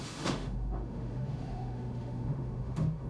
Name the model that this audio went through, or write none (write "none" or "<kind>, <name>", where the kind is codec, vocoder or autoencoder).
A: autoencoder, DAC-VAE